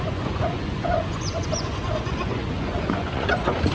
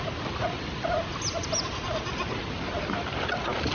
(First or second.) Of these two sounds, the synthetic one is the first